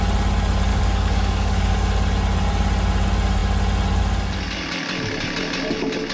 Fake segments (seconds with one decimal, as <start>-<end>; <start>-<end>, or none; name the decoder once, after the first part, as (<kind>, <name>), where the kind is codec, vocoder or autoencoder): 0.7-1.7 (codec, DAC)